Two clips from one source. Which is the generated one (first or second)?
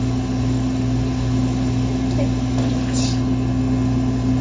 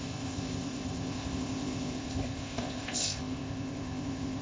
second